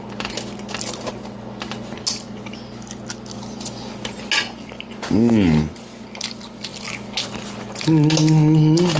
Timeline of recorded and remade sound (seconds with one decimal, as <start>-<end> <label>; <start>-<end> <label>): 0.0-9.0 recorded